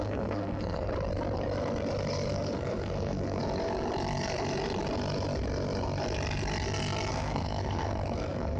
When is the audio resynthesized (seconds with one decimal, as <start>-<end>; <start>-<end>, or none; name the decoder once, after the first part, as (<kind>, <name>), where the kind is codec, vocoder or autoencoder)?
0.0-0.9 (codec, SNAC); 2.3-3.4; 7.1-8.6